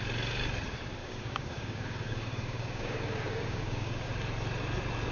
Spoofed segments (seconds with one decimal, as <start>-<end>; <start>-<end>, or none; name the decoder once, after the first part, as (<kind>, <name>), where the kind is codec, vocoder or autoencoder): 1.0-4.1 (codec, DAC)